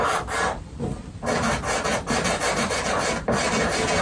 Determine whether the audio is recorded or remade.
remade